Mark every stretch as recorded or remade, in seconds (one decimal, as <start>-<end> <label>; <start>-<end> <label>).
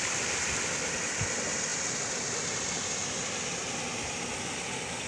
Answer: 0.0-5.1 recorded